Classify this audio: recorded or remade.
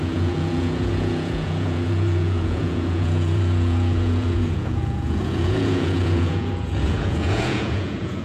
remade